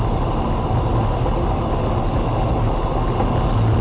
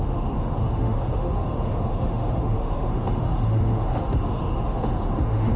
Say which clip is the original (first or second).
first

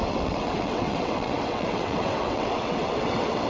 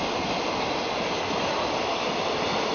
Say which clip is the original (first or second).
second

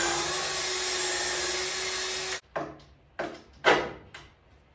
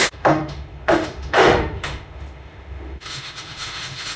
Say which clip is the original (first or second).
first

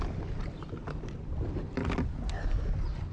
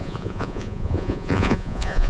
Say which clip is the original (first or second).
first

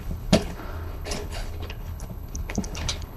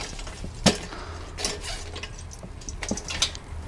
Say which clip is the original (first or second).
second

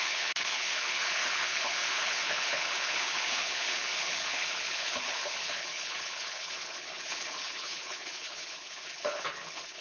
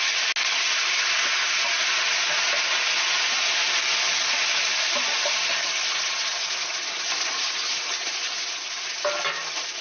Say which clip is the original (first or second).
second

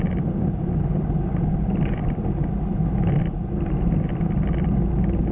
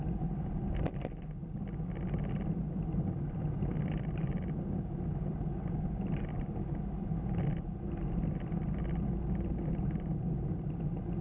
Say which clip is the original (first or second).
second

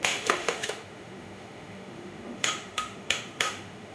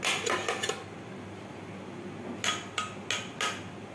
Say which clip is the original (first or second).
second